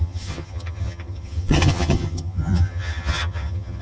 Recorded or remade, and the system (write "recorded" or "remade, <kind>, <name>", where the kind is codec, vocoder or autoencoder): remade, vocoder, HiFi-GAN